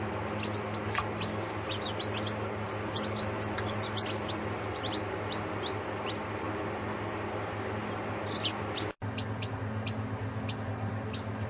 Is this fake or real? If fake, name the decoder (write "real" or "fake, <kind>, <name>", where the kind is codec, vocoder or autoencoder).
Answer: real